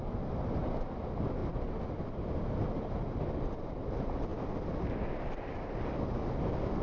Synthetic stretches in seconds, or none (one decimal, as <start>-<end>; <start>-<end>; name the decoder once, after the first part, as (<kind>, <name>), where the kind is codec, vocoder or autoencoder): none